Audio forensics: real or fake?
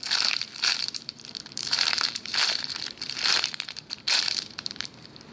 fake